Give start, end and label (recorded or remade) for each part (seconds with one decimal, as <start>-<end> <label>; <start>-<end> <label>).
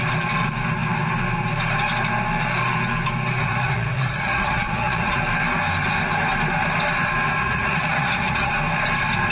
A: 0.0-3.4 recorded; 3.4-5.2 remade; 5.2-7.4 recorded; 7.4-8.5 remade; 8.5-9.3 recorded